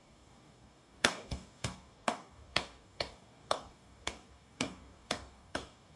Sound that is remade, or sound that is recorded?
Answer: remade